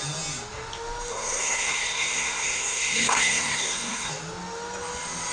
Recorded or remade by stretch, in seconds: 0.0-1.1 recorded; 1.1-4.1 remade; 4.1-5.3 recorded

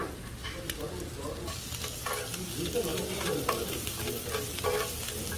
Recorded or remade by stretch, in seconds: 0.0-1.6 remade; 1.6-2.9 recorded; 2.9-4.1 remade; 4.1-5.4 recorded